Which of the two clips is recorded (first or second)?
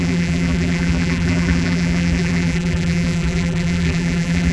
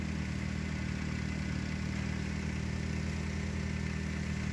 second